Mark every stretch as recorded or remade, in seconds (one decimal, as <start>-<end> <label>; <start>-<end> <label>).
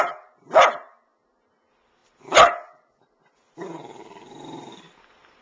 0.0-5.4 recorded